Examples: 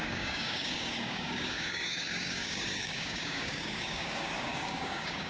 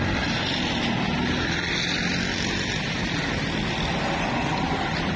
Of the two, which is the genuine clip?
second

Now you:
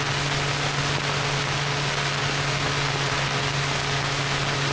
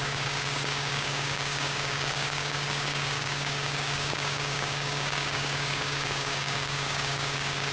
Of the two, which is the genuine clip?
first